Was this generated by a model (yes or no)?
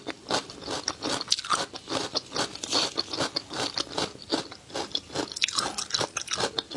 no